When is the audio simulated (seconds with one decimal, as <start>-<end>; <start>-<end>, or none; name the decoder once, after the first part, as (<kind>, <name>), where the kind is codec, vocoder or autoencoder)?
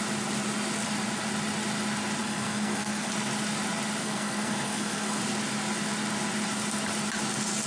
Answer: 2.2-3.1 (codec, SNAC); 4.0-5.2